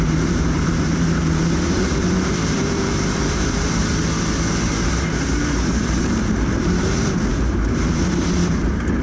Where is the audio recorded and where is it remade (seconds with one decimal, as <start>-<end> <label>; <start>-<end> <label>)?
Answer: 0.0-3.8 remade; 3.8-4.7 recorded; 4.7-9.0 remade

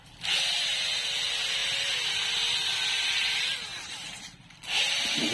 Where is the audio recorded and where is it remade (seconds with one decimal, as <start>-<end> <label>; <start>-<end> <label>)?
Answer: 0.0-3.7 recorded; 3.7-4.2 remade; 4.2-5.3 recorded